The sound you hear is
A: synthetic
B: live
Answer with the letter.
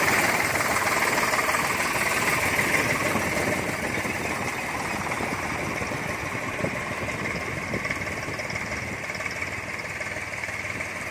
B